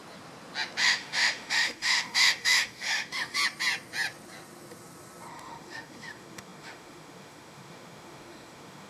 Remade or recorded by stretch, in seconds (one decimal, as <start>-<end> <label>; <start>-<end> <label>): 0.0-0.8 recorded; 0.8-3.4 remade; 3.4-5.3 recorded; 5.3-8.9 remade